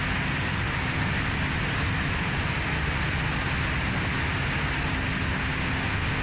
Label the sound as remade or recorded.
recorded